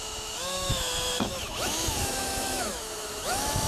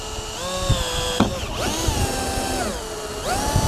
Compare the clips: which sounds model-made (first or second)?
first